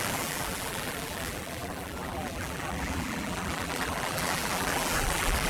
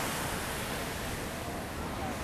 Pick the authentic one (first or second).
second